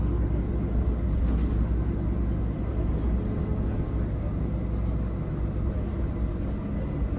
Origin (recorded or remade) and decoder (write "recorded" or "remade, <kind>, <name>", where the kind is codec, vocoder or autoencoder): recorded